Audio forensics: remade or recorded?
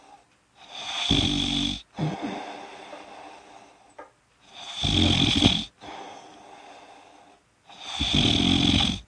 recorded